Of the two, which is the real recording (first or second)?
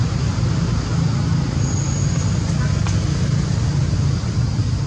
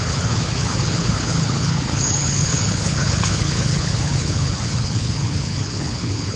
first